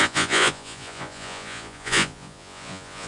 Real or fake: fake